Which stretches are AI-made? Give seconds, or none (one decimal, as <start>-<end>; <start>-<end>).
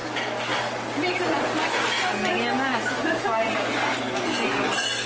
2.7-3.5